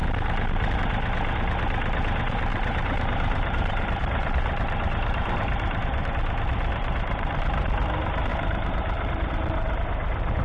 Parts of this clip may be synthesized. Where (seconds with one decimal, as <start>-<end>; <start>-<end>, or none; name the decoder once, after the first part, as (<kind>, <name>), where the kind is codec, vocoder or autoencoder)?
2.5-6.1 (vocoder, BigVGAN v2); 6.8-7.4; 8.3-9.3